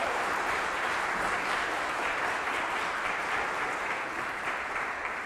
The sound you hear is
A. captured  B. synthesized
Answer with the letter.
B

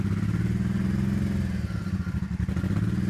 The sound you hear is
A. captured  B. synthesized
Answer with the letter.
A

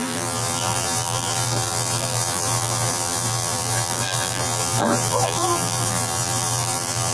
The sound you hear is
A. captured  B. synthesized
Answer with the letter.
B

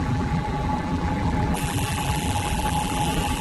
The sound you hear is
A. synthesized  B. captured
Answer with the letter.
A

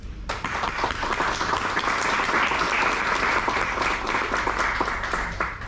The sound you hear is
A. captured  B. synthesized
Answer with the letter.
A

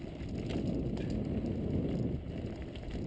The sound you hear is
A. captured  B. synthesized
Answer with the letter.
A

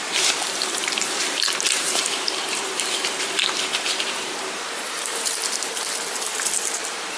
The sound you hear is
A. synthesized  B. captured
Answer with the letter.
A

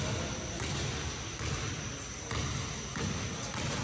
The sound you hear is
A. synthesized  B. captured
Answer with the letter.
B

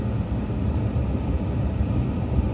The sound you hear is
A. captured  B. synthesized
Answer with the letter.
B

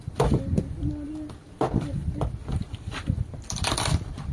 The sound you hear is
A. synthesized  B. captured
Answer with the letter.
B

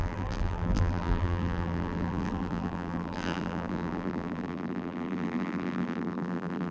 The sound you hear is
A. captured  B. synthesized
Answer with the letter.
B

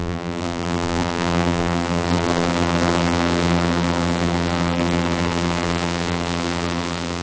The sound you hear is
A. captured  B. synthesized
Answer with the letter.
B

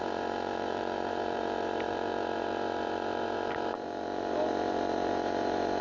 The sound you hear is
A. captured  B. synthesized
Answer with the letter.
B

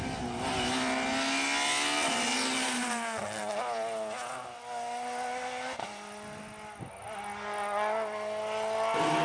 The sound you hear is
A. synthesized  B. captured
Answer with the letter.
B